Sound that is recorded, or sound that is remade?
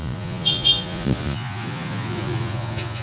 remade